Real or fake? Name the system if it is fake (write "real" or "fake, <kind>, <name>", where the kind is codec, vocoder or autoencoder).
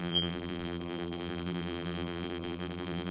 fake, vocoder, BigVGAN v2